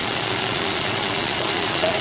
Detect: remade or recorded remade